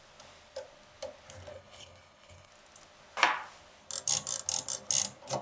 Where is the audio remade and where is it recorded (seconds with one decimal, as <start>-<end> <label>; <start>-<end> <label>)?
0.0-1.5 recorded; 1.5-2.5 remade; 2.5-5.4 recorded